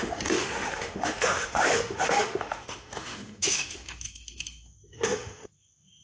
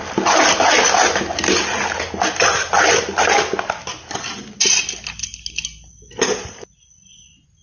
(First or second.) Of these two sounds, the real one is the second